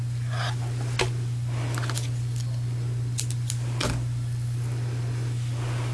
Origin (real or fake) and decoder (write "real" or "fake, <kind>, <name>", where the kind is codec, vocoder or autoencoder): real